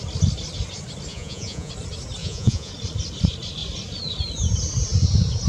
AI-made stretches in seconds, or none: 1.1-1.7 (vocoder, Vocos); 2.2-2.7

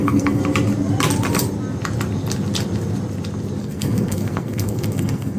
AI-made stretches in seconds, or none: 0.0-0.4 (codec, SNAC); 3.6-5.4

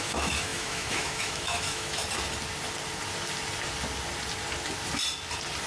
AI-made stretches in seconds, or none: 0.0-2.0 (autoencoder, DAC-VAE)